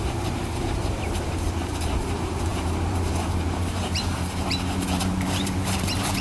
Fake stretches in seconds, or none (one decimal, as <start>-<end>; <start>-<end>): 0.0-6.2